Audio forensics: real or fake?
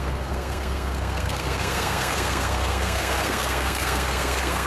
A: fake